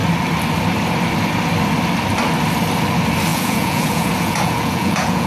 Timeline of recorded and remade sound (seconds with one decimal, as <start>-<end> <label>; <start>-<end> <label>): 0.0-3.3 recorded; 3.3-5.3 remade